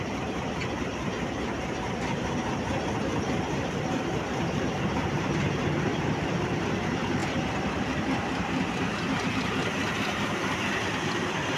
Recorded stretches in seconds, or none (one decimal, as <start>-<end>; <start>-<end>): 0.6-3.7